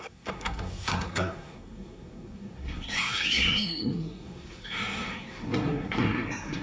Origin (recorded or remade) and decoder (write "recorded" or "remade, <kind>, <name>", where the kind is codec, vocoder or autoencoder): remade, codec, SNAC